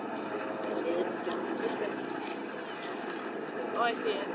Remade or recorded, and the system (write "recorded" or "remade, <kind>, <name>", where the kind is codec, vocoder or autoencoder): recorded